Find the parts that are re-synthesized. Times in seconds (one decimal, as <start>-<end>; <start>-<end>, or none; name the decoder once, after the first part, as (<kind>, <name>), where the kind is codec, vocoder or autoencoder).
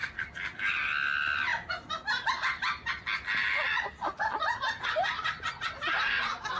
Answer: none